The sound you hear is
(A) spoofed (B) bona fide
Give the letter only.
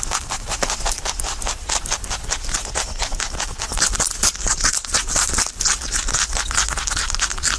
B